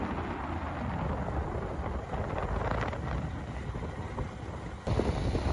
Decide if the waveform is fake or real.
real